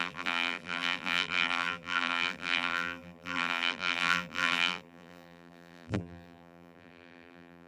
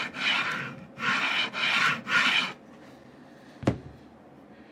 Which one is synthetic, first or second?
first